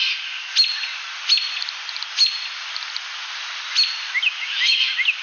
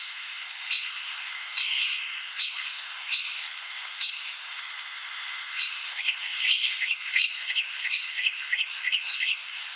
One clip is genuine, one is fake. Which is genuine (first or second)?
first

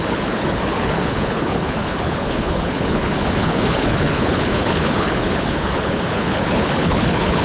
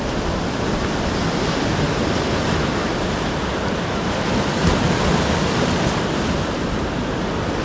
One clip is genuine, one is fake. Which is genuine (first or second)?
second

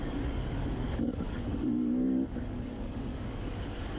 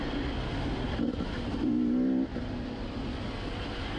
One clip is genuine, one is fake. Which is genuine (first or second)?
second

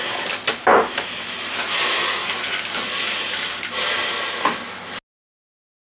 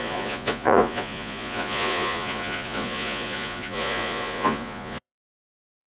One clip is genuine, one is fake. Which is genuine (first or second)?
first